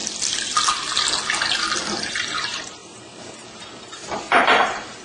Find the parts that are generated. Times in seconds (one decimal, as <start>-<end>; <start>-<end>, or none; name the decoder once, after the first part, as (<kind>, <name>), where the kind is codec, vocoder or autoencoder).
2.1-5.0 (vocoder, BigVGAN v2)